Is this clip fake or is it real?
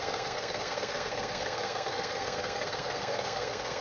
fake